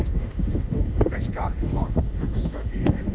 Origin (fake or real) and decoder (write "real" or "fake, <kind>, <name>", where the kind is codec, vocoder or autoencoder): fake, autoencoder, DAC-VAE